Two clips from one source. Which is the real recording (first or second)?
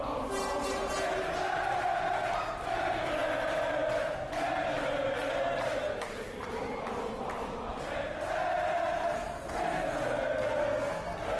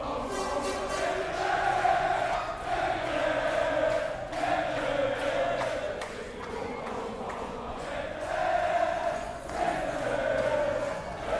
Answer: first